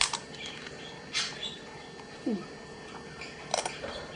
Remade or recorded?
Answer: recorded